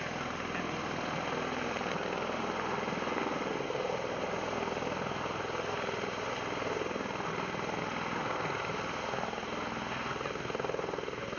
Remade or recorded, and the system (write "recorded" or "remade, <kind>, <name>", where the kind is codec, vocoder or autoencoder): recorded